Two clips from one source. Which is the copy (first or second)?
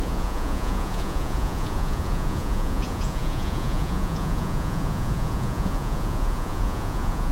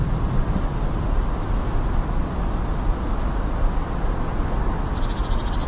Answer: first